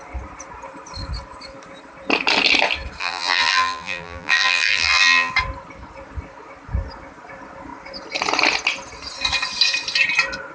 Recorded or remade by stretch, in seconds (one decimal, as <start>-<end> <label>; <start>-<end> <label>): 0.0-3.0 recorded; 3.0-5.3 remade; 5.3-10.5 recorded